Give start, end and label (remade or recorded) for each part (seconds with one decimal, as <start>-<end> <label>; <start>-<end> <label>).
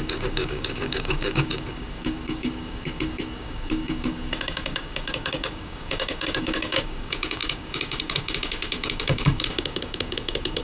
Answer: 0.0-10.6 remade